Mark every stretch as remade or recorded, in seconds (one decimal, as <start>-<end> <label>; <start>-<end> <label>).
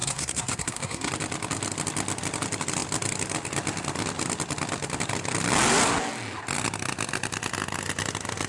0.0-1.1 remade; 1.1-8.5 recorded